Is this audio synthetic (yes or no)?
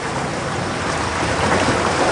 no